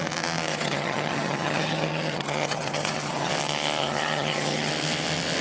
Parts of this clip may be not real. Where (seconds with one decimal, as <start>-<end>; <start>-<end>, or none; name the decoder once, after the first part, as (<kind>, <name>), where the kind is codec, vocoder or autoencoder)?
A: 0.5-3.3 (vocoder, HiFi-GAN); 3.8-4.7